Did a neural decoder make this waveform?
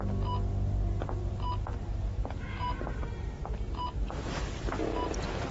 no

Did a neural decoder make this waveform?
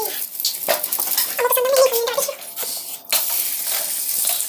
no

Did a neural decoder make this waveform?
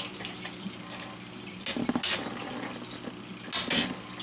no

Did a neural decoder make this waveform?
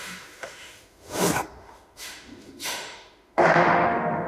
yes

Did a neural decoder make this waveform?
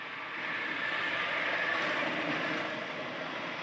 no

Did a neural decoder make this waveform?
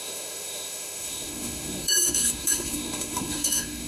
yes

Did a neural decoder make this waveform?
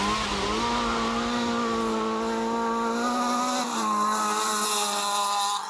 no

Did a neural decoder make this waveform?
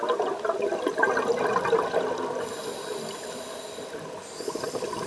no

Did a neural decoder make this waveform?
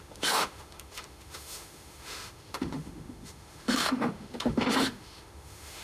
yes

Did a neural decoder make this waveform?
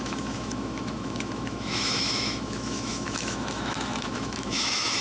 yes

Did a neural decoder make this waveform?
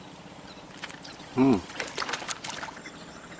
no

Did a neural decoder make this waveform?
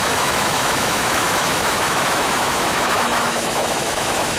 yes